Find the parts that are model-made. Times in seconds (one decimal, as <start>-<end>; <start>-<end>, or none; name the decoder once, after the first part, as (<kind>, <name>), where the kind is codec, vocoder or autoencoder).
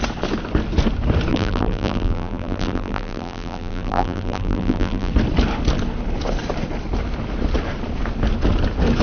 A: 1.3-5.1 (vocoder, BigVGAN v2)